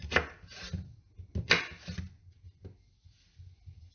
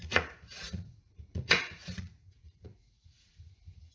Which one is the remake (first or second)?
second